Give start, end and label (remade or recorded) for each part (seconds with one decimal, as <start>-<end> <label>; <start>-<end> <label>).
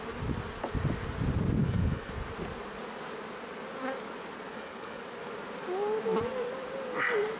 0.0-1.6 recorded; 1.6-2.1 remade; 2.1-4.5 recorded; 4.5-5.0 remade; 5.0-7.4 recorded